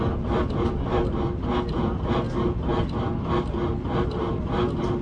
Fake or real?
real